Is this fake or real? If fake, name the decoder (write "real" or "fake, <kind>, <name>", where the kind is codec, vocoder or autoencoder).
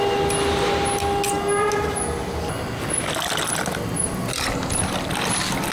real